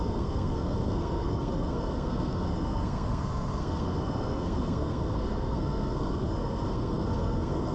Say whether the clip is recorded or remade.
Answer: remade